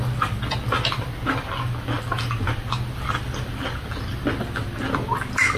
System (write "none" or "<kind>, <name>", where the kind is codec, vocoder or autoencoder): none